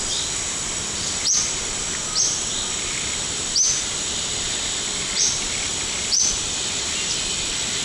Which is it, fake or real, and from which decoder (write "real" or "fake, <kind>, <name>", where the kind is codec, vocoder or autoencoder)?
fake, vocoder, BigVGAN v2